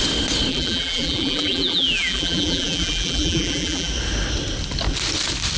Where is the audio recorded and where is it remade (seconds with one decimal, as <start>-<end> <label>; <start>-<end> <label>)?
0.0-0.5 recorded; 0.5-3.9 remade; 3.9-5.6 recorded